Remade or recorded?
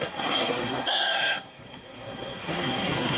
remade